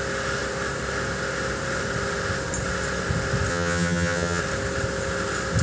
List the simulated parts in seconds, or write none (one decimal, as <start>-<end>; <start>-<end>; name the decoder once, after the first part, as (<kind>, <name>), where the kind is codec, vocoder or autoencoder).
3.5-4.4 (vocoder, HiFi-GAN)